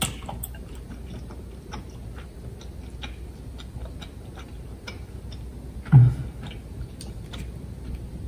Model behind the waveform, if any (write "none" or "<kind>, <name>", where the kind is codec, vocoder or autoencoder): none